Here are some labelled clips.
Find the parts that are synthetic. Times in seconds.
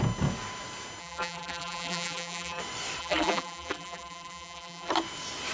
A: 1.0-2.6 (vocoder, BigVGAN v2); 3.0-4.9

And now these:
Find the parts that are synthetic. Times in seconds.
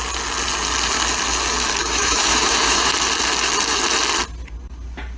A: 1.8-2.9 (autoencoder, DAC-VAE)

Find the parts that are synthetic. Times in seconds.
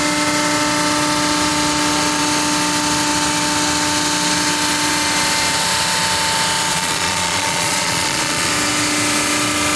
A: 6.7-8.5 (vocoder, Vocos)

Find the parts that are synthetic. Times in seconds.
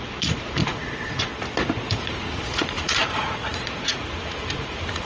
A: 0.0-1.3 (vocoder, Vocos); 2.0-5.1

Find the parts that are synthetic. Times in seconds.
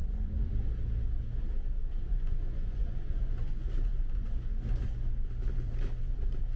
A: 0.0-0.5 (vocoder, Vocos); 1.8-4.3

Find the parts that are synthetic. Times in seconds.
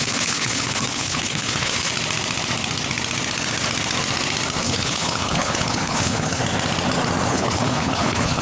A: 0.0-1.9 (codec, HILCodec); 4.6-6.4; 7.3-8.4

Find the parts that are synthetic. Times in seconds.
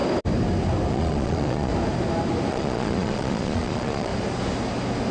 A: 0.9-1.7 (vocoder, Vocos); 2.5-4.1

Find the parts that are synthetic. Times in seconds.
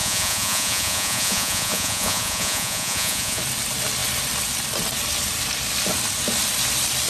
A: 0.0-3.4 (vocoder, Vocos)